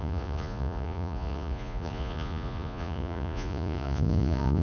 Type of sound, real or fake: fake